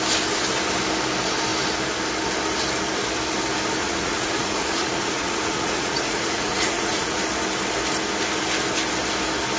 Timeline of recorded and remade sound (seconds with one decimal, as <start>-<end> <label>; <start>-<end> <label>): 0.0-3.8 recorded; 3.8-7.2 remade; 7.2-9.6 recorded